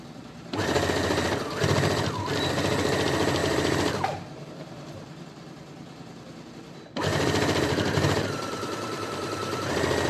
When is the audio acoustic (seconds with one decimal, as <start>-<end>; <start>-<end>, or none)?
0.0-3.4; 6.5-7.1; 9.7-10.1